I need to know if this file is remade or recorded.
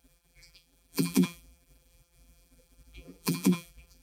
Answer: remade